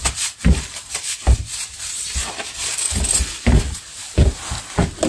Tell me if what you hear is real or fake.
real